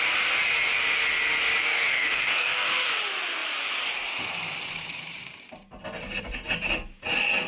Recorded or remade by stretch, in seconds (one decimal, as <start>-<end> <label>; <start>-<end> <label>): 0.0-1.6 recorded; 1.6-2.9 remade; 2.9-7.5 recorded